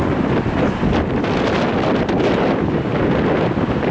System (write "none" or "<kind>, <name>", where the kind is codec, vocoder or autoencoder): none